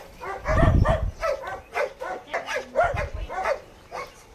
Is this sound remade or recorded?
recorded